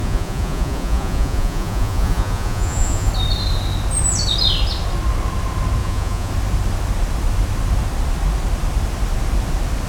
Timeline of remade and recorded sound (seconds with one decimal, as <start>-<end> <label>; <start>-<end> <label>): 0.0-3.1 remade; 3.1-5.8 recorded; 5.8-6.3 remade; 6.3-9.9 recorded